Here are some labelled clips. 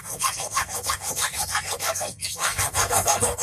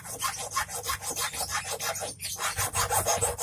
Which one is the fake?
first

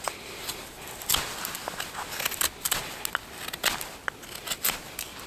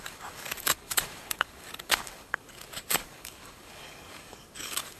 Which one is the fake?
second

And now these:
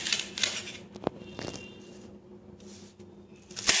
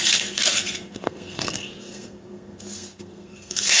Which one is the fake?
second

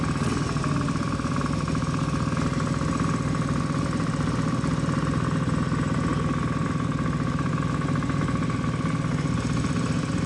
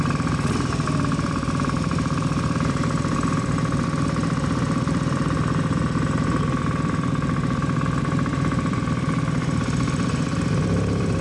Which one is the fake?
second